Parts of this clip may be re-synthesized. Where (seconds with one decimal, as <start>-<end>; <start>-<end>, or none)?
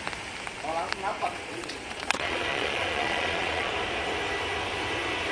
1.1-3.7